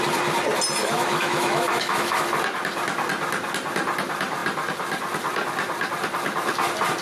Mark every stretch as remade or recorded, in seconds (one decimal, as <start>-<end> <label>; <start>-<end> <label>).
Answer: 0.0-0.8 recorded; 0.8-2.2 remade; 2.2-7.0 recorded